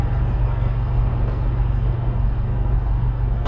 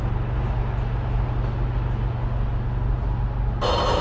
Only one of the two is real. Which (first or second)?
second